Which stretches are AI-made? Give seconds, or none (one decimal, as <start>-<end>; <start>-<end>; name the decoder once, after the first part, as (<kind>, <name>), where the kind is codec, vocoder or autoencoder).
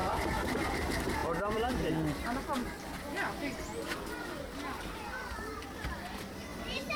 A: 1.2-1.9 (vocoder, BigVGAN v2); 6.5-7.0